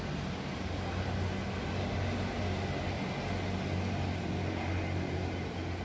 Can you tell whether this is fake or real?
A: real